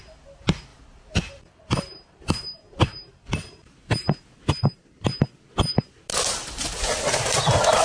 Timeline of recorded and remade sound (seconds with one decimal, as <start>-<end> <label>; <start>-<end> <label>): 0.0-7.8 recorded